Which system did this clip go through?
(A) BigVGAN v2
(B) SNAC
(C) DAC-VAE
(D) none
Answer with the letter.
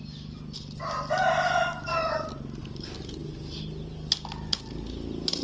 D